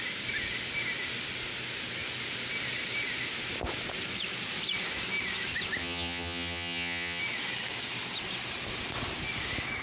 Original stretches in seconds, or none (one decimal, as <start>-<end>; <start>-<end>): 0.0-5.8; 7.2-9.8

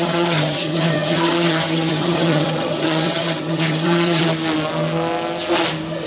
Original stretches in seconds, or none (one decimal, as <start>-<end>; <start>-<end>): 4.2-6.1

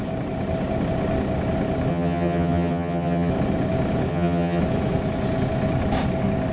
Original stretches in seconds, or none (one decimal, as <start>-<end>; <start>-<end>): 0.0-1.9; 3.3-4.1; 4.6-6.5

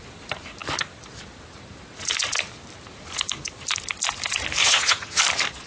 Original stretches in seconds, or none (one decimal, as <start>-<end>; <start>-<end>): 0.0-4.6; 5.2-5.7

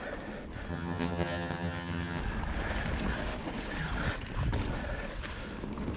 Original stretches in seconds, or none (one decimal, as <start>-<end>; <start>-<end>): 0.0-0.7; 2.2-6.0